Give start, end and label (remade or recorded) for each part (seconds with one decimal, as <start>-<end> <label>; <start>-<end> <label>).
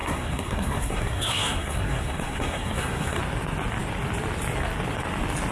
0.0-3.2 remade; 3.2-5.5 recorded